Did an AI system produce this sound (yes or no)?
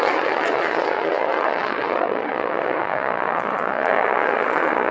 yes